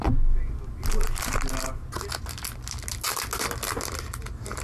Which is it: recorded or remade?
recorded